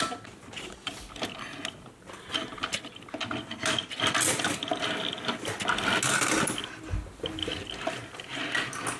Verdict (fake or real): real